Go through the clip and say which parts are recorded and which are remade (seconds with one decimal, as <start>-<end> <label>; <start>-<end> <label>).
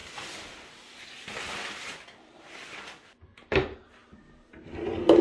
0.0-5.2 recorded